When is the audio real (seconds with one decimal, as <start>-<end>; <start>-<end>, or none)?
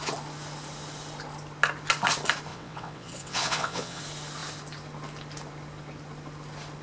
0.0-2.5; 4.0-6.8